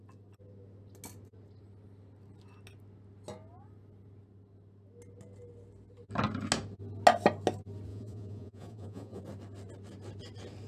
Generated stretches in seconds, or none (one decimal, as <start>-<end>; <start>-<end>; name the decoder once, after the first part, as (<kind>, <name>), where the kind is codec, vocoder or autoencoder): 7.9-9.2 (vocoder, Vocos)